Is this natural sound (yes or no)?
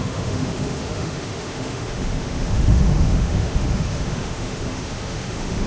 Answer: no